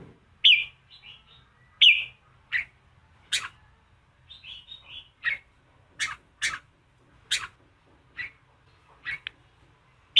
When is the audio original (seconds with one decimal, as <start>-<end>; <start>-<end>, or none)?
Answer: 0.0-10.2